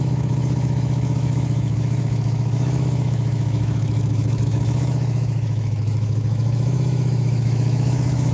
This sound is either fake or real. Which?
fake